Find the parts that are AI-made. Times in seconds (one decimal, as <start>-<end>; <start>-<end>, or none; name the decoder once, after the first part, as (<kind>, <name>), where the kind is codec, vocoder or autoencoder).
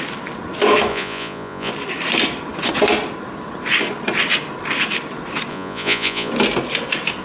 0.9-1.7 (vocoder, Vocos); 5.5-6.3